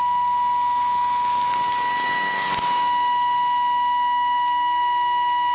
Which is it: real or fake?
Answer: fake